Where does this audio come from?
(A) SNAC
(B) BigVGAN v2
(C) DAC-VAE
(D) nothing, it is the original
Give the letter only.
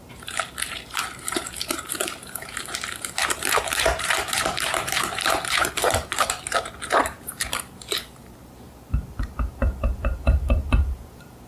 B